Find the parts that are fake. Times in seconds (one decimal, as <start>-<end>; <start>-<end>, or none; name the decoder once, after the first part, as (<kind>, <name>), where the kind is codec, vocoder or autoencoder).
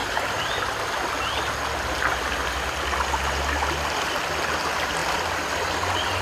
none